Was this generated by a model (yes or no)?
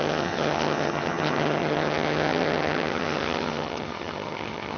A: yes